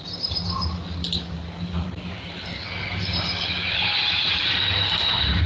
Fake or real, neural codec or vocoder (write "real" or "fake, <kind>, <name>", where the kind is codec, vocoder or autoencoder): real